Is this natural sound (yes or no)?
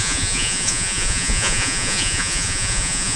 no